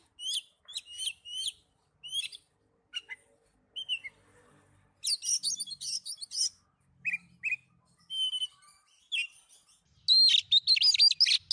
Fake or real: real